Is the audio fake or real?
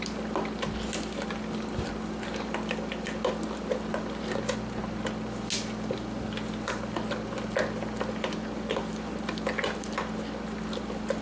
real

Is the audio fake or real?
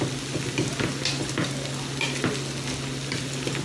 real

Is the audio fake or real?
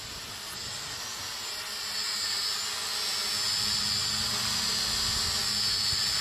real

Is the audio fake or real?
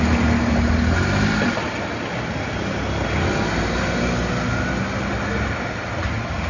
real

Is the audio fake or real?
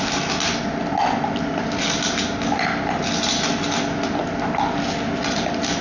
real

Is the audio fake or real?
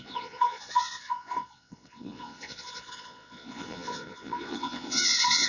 fake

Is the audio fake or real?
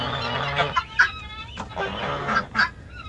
real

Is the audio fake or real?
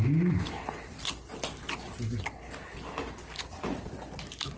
real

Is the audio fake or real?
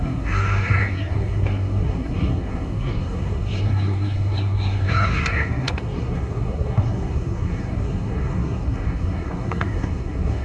fake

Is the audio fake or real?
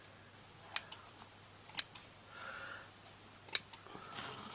real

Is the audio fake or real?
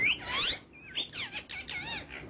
real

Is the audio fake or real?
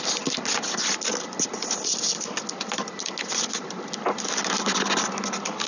real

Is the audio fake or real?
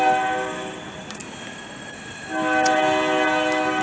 real